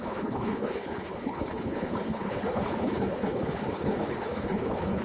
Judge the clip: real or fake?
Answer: fake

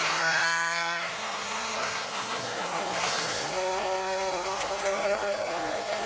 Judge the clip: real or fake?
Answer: fake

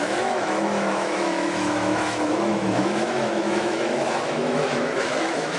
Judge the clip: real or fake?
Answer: fake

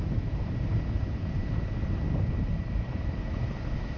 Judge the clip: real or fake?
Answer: fake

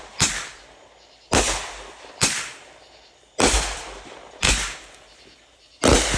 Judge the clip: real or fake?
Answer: fake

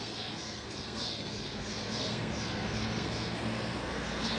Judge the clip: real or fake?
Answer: fake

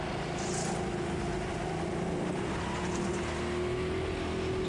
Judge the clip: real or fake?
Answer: real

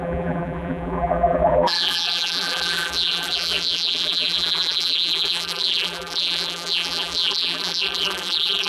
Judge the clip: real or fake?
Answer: fake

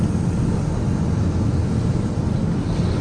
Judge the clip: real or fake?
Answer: real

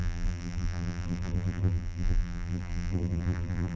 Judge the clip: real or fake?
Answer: fake